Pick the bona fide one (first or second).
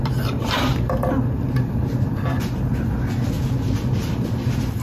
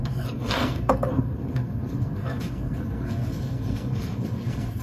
first